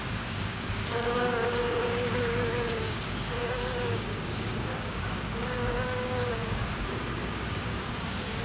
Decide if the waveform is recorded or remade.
remade